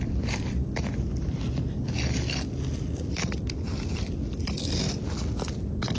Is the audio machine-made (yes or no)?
no